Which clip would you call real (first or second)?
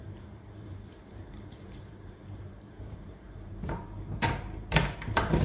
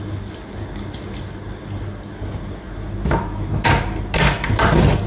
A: second